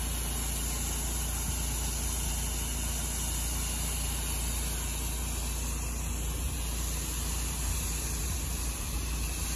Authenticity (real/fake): real